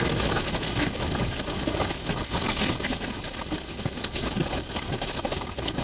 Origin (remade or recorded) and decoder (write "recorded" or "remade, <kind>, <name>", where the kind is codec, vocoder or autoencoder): recorded